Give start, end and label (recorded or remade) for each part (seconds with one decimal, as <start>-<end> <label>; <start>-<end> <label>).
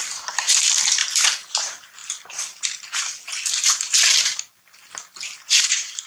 0.0-1.0 remade; 1.0-1.5 recorded; 1.5-2.0 remade; 2.0-5.6 recorded; 5.6-6.1 remade